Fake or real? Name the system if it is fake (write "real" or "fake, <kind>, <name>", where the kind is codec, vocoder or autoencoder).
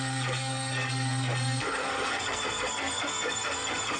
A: fake, codec, SNAC